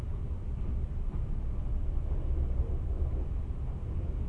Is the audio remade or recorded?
recorded